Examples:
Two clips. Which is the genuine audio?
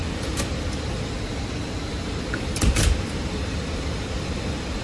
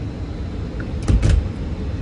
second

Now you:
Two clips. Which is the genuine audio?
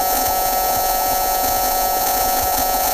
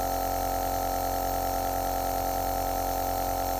second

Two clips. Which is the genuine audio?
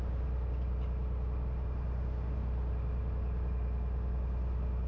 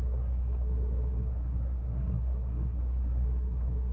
first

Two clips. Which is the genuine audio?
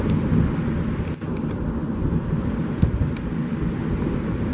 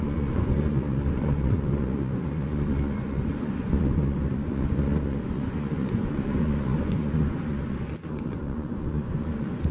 first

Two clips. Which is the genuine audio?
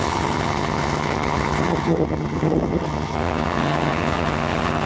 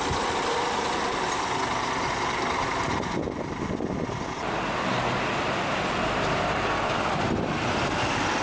second